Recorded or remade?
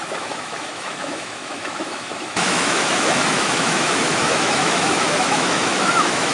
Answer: remade